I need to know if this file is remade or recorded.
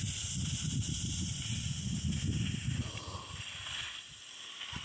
recorded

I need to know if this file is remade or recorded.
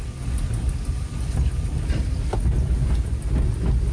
recorded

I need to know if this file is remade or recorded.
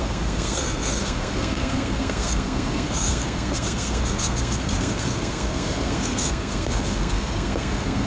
remade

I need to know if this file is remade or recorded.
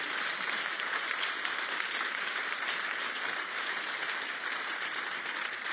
remade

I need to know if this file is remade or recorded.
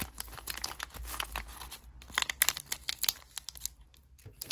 recorded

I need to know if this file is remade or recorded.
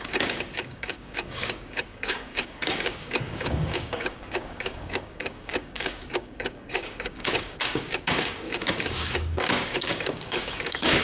remade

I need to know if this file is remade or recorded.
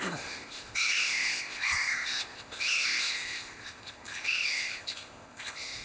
remade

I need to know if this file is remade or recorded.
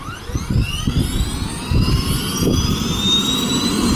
recorded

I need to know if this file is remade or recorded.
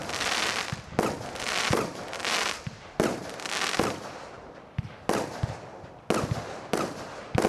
recorded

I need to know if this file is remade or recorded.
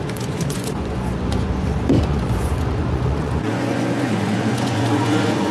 remade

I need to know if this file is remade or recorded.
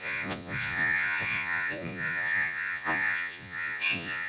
remade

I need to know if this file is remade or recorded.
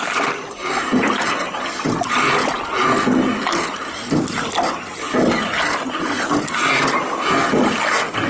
recorded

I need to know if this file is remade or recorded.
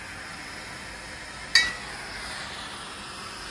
recorded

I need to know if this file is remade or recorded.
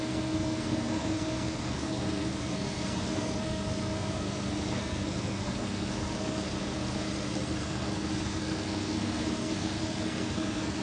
remade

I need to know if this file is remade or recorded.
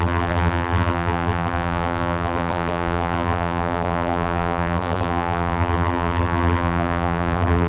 remade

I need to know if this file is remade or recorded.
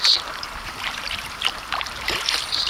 remade